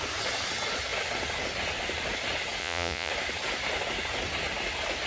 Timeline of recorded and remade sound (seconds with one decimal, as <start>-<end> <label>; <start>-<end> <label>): 0.0-2.6 recorded; 2.6-3.1 remade; 3.1-5.1 recorded